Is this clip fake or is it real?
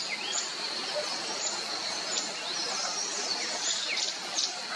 real